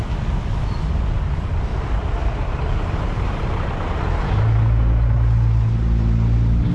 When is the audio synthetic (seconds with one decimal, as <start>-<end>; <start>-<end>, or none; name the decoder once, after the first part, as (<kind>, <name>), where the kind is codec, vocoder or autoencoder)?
1.7-4.2 (vocoder, BigVGAN v2)